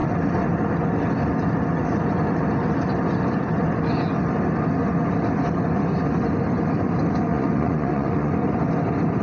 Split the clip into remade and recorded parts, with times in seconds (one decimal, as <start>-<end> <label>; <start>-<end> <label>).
0.0-7.3 recorded; 7.3-8.3 remade; 8.3-9.2 recorded